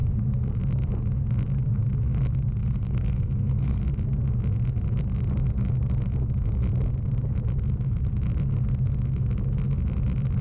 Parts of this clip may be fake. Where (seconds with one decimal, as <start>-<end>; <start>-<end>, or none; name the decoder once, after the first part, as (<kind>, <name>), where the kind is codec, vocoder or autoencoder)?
2.6-3.8 (codec, SNAC)